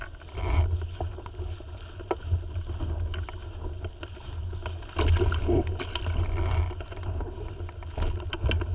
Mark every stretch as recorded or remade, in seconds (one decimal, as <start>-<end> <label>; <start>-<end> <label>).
0.0-8.7 recorded

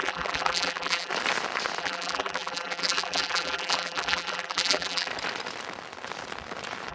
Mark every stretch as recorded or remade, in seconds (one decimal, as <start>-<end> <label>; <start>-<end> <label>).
0.0-1.1 remade; 1.1-1.8 recorded; 1.8-5.1 remade; 5.1-6.9 recorded

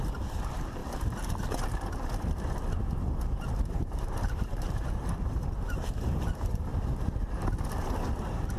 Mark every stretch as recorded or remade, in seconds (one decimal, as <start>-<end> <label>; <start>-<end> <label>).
0.0-0.8 remade; 0.8-3.5 recorded; 3.5-6.7 remade; 6.7-8.6 recorded

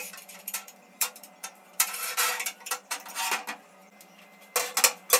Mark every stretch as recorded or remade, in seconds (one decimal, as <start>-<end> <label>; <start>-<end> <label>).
0.0-3.1 remade; 3.1-5.2 recorded